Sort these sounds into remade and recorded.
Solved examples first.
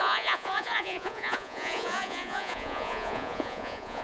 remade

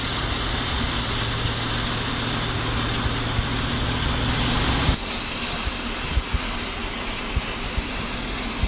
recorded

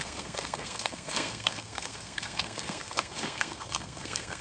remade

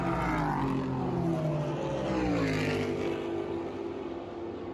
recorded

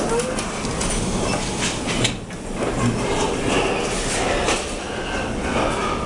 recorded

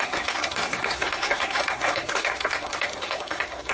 remade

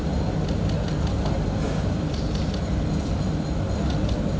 recorded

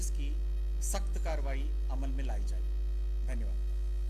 recorded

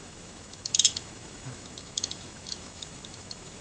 remade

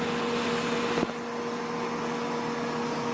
recorded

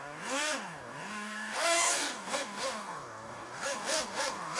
remade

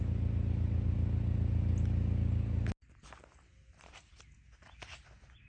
recorded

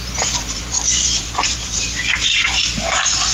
remade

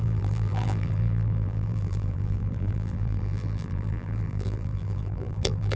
remade